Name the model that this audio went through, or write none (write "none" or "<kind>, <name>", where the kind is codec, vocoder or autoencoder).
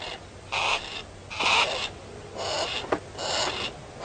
none